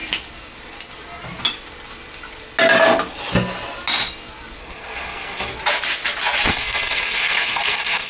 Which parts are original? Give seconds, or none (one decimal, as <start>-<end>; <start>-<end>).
0.0-4.6; 5.5-6.5